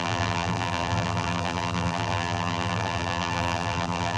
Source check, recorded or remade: remade